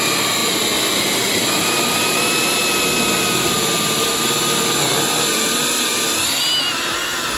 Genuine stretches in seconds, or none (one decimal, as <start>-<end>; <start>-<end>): 0.0-7.4